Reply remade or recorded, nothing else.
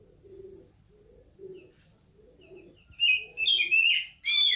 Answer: recorded